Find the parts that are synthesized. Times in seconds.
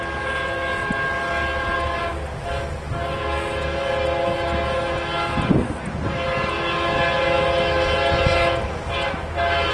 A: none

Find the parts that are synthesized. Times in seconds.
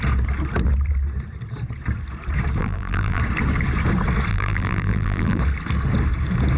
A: 2.6-3.2; 4.3-5.4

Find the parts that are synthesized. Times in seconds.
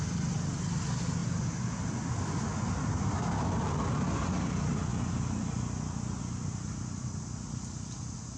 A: none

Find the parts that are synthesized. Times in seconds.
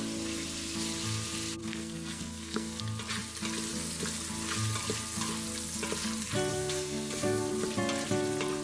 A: 1.6-2.8; 6.5-7.5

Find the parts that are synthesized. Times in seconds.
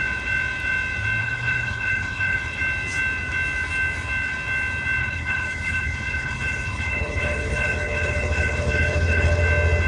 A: 1.2-2.6; 5.0-9.4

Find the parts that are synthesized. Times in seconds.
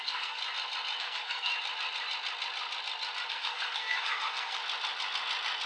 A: 0.0-0.4; 1.0-1.5; 3.3-4.6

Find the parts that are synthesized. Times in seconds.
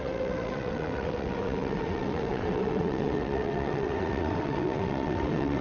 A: 0.0-5.6